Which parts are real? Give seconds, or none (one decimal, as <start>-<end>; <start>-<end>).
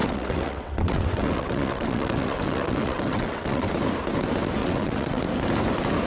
3.7-4.6; 5.2-6.1